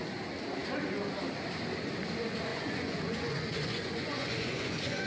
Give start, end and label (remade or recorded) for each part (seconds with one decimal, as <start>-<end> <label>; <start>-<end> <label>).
0.0-2.5 recorded; 2.5-5.1 remade